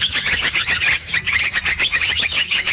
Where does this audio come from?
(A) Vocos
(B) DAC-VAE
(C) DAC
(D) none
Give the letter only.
C